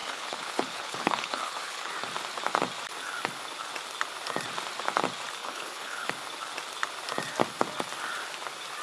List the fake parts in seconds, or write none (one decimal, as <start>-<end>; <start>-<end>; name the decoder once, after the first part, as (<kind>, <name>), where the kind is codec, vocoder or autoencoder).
0.0-1.9 (codec, HILCodec); 5.4-6.1